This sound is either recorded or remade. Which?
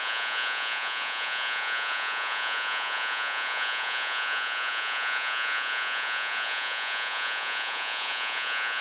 remade